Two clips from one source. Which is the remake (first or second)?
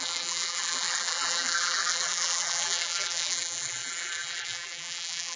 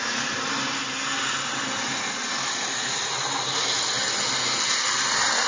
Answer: first